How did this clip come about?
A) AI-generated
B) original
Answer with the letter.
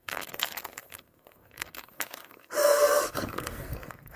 A